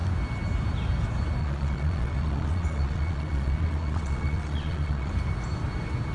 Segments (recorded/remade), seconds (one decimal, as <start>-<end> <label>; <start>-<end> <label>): 0.0-1.4 recorded; 1.4-5.1 remade; 5.1-6.1 recorded